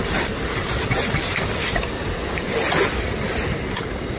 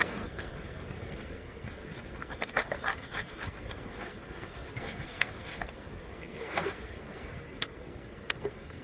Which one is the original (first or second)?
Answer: first